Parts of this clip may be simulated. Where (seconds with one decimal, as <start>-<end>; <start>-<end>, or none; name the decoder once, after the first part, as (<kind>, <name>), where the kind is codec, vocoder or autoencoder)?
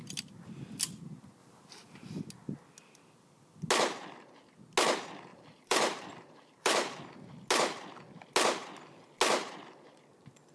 1.4-2.2 (vocoder, BigVGAN v2); 5.3-7.0